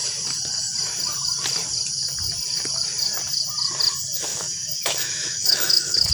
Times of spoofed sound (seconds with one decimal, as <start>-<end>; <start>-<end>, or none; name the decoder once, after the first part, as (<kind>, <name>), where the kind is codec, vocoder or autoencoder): 4.3-6.1 (autoencoder, DAC-VAE)